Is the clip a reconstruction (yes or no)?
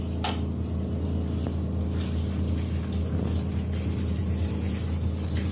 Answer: no